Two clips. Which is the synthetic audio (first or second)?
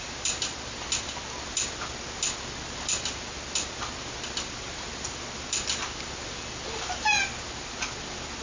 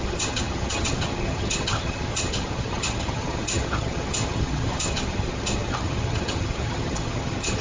second